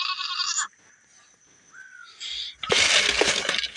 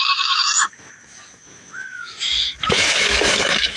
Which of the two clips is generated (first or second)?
second